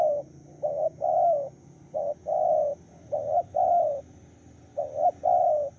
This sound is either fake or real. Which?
real